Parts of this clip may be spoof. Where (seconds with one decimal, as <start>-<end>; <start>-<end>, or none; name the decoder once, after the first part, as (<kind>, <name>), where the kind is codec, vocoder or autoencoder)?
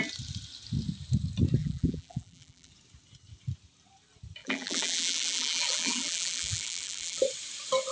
1.6-2.7 (vocoder, BigVGAN v2); 4.4-7.2